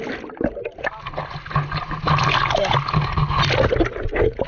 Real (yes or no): yes